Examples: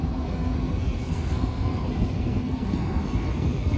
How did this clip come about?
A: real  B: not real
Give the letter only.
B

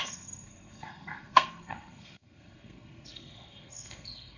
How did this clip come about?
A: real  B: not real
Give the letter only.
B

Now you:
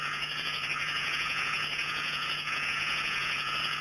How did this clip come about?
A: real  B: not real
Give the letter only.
B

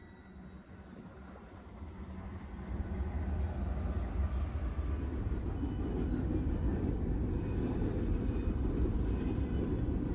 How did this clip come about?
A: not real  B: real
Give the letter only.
B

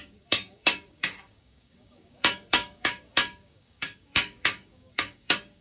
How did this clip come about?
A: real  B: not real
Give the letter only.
B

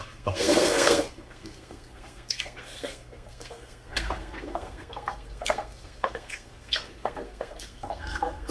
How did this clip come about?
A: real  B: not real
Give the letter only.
B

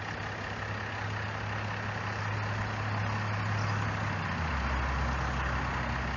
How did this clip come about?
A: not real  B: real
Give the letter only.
B